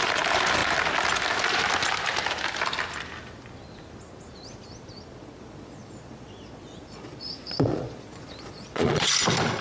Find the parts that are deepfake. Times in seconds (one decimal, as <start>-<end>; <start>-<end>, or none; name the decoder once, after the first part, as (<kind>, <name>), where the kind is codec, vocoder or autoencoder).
5.2-9.1 (vocoder, Vocos)